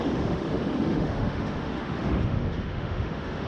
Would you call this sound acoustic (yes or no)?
no